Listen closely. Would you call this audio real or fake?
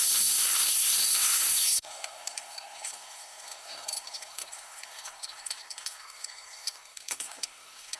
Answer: fake